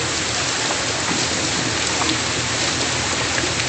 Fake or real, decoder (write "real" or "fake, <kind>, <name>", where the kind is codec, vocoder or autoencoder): real